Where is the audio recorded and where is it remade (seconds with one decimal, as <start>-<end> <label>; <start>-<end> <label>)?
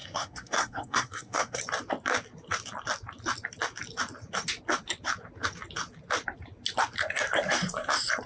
0.0-1.6 remade; 1.6-8.3 recorded